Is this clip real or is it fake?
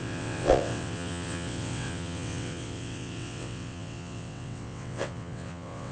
fake